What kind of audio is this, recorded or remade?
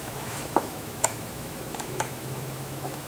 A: remade